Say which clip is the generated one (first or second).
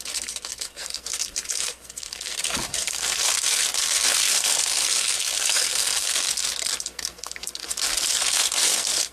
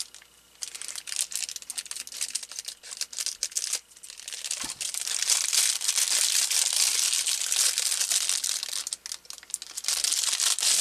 first